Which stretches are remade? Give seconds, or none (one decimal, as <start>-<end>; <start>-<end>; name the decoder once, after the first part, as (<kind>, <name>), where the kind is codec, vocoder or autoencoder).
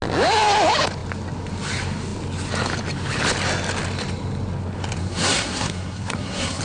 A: 5.0-6.6 (codec, SNAC)